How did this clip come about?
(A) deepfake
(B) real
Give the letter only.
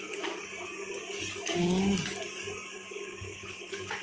A